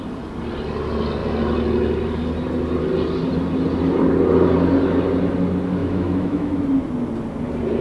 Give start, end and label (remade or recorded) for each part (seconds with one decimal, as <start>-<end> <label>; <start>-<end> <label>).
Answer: 0.0-5.8 recorded; 5.8-6.5 remade; 6.5-7.8 recorded